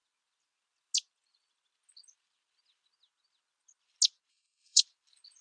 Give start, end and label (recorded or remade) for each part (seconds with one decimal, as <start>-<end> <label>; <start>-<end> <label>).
0.0-4.3 recorded; 4.3-4.8 remade; 4.8-5.4 recorded